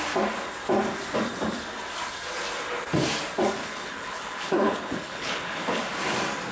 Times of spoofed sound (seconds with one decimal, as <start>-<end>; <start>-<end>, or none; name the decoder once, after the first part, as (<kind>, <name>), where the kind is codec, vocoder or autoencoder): 3.6-5.8 (codec, HILCodec)